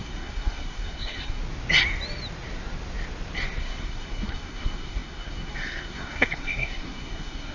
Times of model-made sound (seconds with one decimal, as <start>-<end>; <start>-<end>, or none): 0.0-1.4; 3.6-7.5